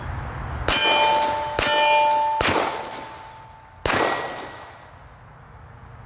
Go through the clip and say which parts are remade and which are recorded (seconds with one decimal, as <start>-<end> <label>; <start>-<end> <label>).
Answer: 0.0-6.1 recorded